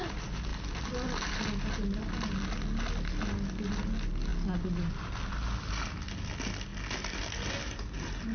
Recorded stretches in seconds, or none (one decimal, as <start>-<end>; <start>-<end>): 0.0-8.3